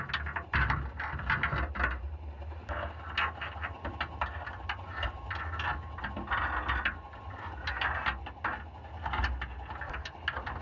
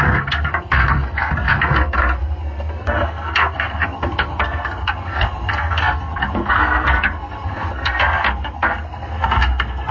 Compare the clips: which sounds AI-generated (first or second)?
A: second